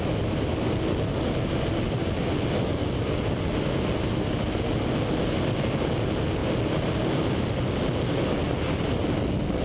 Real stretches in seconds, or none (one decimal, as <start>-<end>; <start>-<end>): 0.0-9.6